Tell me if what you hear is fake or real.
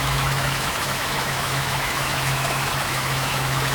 fake